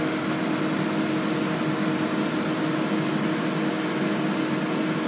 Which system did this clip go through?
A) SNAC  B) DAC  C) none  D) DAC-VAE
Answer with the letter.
C